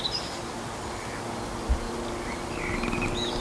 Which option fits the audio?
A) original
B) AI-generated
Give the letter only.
B